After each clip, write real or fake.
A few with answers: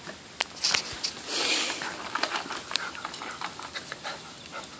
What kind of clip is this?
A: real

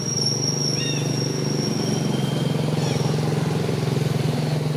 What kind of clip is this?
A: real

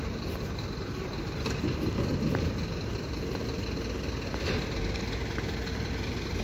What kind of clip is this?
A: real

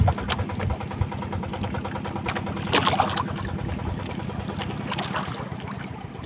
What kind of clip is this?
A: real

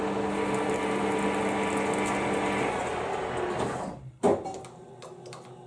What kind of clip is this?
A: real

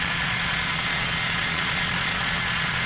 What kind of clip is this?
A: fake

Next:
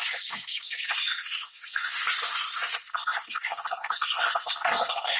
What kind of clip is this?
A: fake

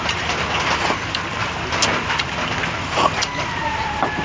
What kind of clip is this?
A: real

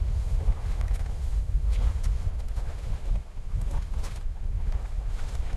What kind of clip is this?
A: fake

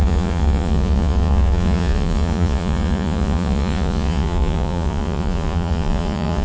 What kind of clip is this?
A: fake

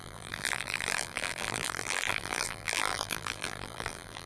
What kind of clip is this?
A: fake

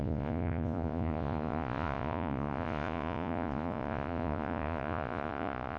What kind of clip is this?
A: fake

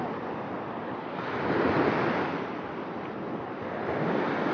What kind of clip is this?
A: real